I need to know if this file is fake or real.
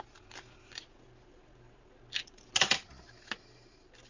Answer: real